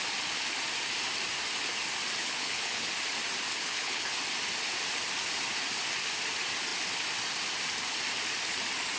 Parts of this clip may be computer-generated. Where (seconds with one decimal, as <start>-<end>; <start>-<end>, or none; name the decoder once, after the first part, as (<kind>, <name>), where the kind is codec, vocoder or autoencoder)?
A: 2.2-2.9 (codec, HILCodec); 3.5-4.1